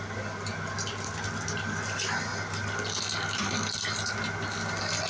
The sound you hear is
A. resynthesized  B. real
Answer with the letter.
B